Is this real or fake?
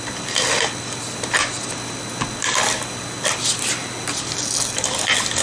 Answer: real